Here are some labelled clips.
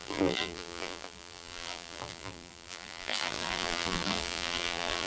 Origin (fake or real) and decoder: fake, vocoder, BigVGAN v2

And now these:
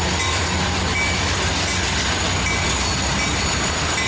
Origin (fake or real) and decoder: real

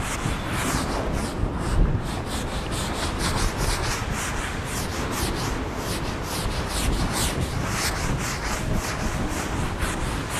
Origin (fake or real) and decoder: real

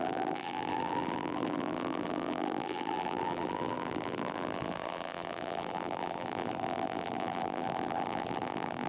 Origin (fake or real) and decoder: fake, vocoder, BigVGAN v2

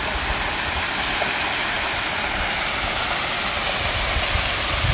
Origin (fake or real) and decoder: real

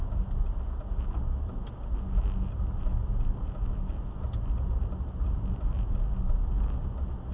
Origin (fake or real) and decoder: real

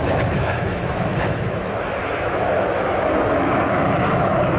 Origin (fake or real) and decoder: fake, autoencoder, DAC-VAE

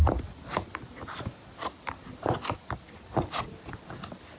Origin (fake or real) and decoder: fake, vocoder, BigVGAN v2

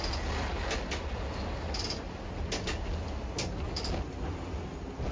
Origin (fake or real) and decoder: real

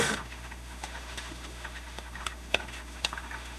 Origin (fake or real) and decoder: fake, autoencoder, DAC-VAE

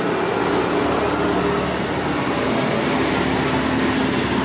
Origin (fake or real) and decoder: real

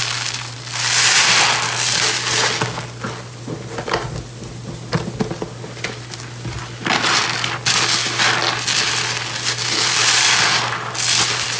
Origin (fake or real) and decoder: real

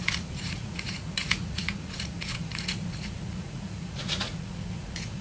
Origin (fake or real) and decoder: fake, vocoder, Vocos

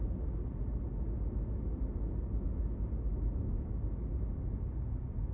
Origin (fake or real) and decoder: real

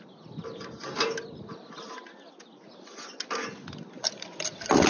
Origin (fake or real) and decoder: real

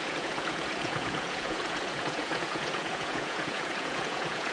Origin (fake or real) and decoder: fake, vocoder, Vocos